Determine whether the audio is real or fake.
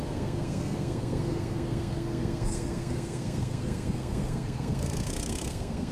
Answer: fake